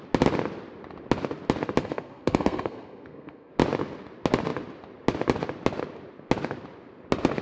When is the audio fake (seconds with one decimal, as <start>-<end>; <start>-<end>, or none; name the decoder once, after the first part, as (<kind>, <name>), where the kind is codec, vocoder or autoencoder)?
1.8-3.5 (codec, SNAC)